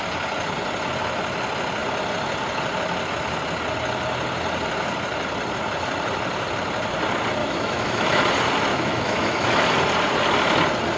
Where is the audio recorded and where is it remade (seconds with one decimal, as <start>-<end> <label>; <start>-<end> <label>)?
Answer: 0.0-7.4 recorded; 7.4-8.2 remade; 8.2-8.7 recorded; 8.7-9.6 remade; 9.6-11.0 recorded